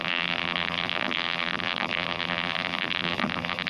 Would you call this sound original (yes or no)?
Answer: no